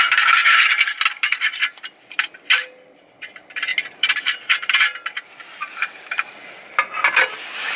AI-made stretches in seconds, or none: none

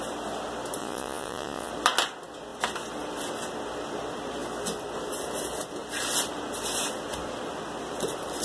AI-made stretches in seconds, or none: 0.8-1.7 (vocoder, Vocos)

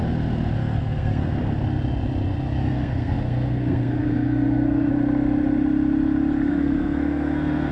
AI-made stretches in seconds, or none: 0.6-1.3 (codec, SNAC); 2.6-4.9; 6.5-7.7

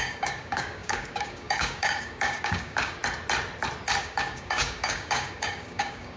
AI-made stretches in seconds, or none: 0.0-3.0 (codec, DAC); 4.0-6.2

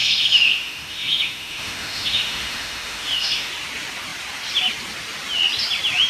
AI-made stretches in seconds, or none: 0.0-3.5 (autoencoder, DAC-VAE)

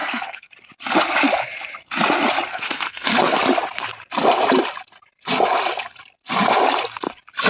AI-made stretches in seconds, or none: 0.0-0.5 (codec, SNAC); 2.5-3.4